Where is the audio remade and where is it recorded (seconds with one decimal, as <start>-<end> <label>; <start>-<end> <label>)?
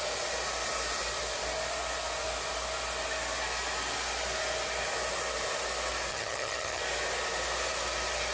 0.0-6.1 recorded; 6.1-6.8 remade; 6.8-8.3 recorded